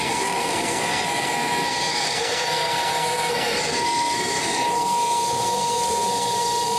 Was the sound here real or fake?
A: fake